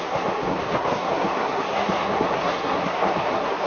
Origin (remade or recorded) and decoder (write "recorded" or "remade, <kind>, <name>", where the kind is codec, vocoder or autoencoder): remade, codec, SNAC